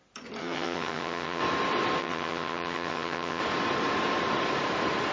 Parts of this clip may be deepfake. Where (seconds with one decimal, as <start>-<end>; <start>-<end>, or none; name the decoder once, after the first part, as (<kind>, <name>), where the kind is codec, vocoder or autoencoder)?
0.4-1.4 (vocoder, HiFi-GAN); 2.0-3.4